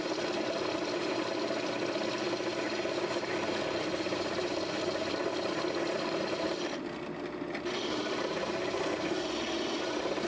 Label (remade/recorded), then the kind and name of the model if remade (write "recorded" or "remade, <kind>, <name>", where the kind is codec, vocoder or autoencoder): recorded